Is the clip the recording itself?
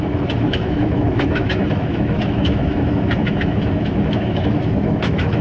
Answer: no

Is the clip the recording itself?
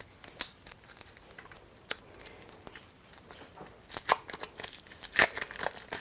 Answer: yes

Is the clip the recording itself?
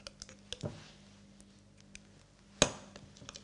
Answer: yes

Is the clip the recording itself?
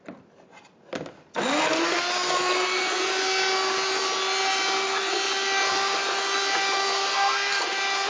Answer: yes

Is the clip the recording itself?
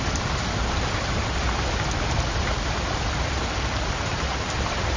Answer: yes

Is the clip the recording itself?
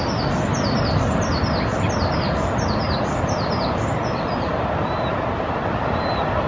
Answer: yes